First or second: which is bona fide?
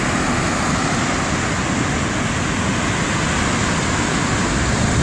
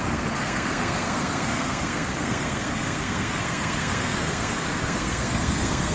first